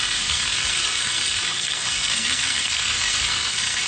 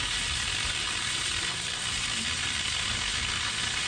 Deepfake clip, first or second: first